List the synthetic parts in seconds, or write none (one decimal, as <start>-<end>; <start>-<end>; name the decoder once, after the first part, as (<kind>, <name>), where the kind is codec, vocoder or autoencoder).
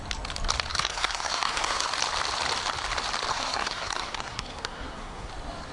0.7-1.9 (codec, SNAC); 3.3-5.3